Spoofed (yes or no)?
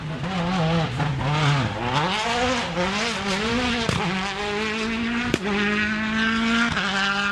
no